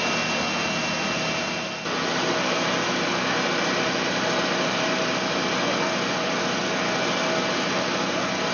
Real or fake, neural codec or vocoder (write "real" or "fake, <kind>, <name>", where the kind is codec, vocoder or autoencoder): real